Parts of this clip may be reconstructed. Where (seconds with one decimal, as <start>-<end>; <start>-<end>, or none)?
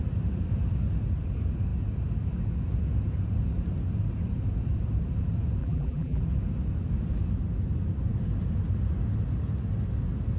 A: 5.6-6.2